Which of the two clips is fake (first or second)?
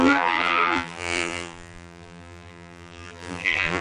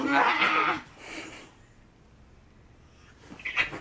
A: first